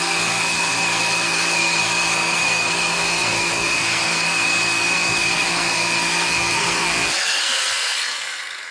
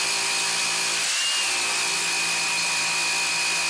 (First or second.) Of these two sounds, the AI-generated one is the first